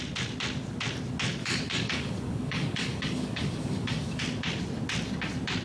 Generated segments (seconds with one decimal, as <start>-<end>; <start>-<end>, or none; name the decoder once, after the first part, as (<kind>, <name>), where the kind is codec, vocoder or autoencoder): 1.4-4.2 (codec, DAC)